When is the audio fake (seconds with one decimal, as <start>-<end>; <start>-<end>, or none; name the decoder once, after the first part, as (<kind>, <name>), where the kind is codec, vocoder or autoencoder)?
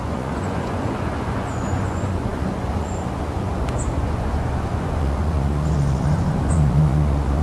0.0-7.4 (vocoder, Vocos)